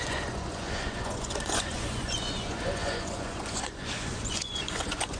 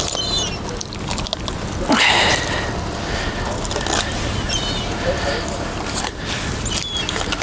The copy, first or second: first